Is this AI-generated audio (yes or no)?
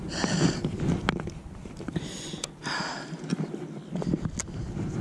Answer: no